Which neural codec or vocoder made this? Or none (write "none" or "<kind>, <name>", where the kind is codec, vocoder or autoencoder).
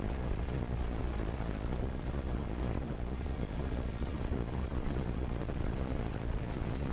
vocoder, Vocos